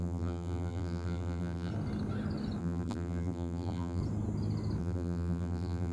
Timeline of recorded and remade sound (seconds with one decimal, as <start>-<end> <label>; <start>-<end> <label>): 0.0-1.7 remade; 1.7-2.6 recorded; 2.6-4.0 remade; 4.0-4.8 recorded; 4.8-5.9 remade

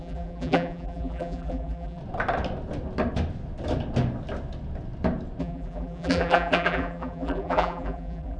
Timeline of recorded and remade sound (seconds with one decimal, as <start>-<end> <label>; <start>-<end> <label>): 0.0-2.0 remade; 2.0-5.4 recorded; 5.4-8.4 remade